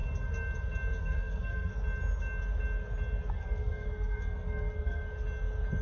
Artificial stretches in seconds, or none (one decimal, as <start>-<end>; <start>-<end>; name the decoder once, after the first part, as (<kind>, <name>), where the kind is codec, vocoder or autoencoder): 1.0-1.7 (codec, SNAC); 3.3-5.0